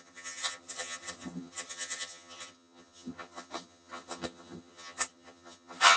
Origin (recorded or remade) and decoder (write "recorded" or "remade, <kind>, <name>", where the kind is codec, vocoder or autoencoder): remade, vocoder, HiFi-GAN